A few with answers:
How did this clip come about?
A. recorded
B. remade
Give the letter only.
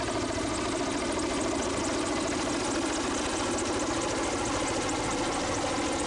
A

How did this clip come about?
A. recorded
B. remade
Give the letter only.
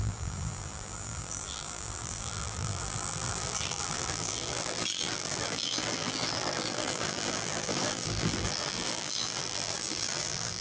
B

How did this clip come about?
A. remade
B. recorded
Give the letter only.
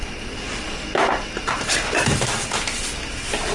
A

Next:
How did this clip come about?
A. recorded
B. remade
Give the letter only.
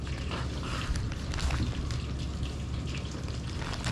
A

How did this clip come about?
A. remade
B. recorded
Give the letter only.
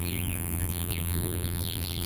A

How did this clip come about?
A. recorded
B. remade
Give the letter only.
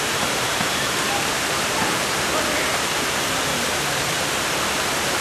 B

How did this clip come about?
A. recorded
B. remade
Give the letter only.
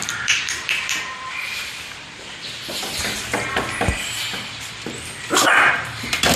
B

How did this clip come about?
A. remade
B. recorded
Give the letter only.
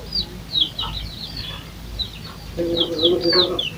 A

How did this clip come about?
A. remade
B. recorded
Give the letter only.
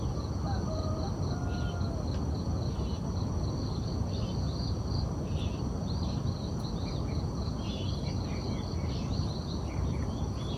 B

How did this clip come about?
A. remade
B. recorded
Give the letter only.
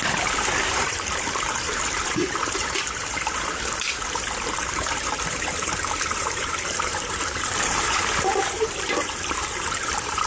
A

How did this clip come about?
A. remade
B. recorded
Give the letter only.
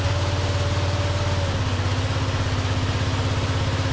B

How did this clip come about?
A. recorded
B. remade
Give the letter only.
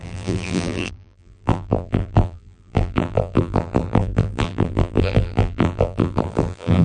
B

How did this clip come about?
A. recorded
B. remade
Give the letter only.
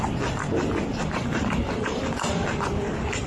A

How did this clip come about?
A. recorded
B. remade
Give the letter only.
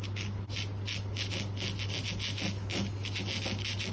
A